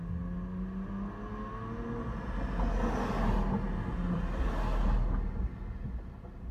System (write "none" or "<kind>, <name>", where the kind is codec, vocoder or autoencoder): none